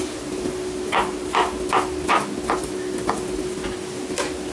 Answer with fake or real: real